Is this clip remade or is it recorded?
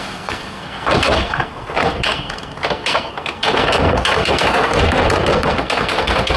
remade